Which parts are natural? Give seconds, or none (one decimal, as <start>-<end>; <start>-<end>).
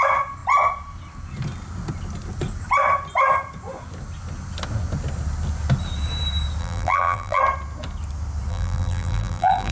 0.0-6.6; 7.4-8.5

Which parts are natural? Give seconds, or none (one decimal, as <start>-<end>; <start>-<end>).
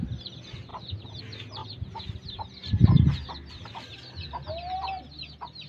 0.0-1.6; 5.0-5.7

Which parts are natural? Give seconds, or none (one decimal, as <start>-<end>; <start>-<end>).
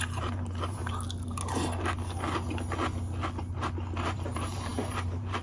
0.8-4.0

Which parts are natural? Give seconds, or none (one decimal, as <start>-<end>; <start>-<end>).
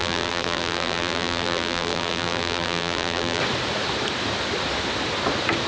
3.4-5.7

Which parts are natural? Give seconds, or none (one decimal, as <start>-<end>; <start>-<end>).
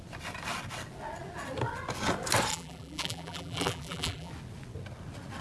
0.0-2.5; 4.3-5.4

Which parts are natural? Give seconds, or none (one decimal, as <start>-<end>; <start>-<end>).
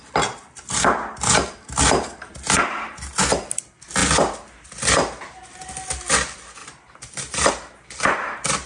0.0-6.6; 7.5-8.7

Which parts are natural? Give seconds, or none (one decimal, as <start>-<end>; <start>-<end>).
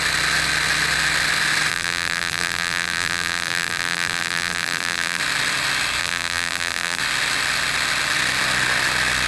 0.0-1.7; 5.2-6.0; 7.0-9.3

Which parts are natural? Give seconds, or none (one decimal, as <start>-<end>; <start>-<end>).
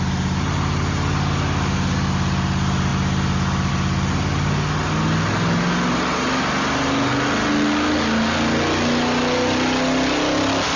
0.0-10.8